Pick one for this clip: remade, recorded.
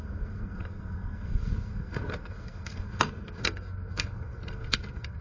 remade